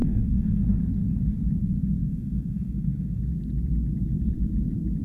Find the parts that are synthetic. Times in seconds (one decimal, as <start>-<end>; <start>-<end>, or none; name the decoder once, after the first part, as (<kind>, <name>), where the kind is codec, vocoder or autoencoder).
0.0-0.6 (codec, SNAC); 2.0-3.2